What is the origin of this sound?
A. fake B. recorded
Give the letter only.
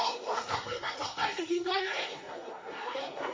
A